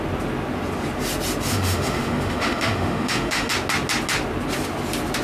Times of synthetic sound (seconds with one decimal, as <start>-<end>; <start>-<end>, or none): 1.5-3.5